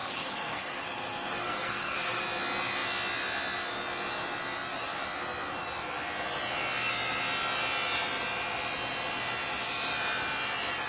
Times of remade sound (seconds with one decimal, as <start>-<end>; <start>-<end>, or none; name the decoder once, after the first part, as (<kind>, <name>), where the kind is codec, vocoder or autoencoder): 0.0-2.2 (codec, SNAC)